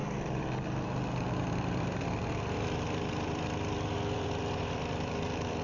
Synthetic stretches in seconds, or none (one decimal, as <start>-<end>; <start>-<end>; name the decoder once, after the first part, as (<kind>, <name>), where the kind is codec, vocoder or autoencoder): 1.3-5.6 (vocoder, BigVGAN v2)